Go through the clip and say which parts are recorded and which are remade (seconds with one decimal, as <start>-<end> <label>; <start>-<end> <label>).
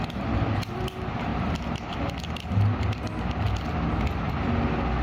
0.0-1.3 recorded; 1.3-2.1 remade; 2.1-5.0 recorded